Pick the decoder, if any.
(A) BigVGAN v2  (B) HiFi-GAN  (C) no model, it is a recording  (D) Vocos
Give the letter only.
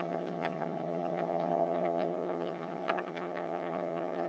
B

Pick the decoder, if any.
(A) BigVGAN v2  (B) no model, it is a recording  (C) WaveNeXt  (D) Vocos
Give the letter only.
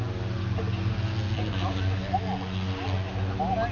B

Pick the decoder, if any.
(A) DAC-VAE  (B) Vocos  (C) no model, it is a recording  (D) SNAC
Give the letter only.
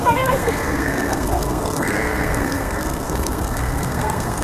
D